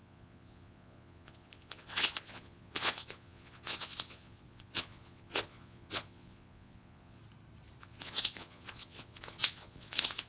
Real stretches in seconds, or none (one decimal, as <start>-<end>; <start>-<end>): 7.2-7.8